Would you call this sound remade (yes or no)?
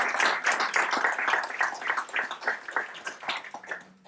no